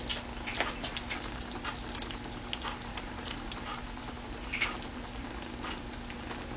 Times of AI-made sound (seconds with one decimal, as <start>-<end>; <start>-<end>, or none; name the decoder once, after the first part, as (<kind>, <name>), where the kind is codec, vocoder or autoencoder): 2.9-4.2 (vocoder, BigVGAN v2)